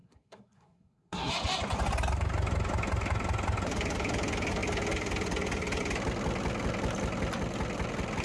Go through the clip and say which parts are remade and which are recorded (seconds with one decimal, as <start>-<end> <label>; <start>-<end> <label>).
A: 0.0-1.3 remade; 1.3-8.2 recorded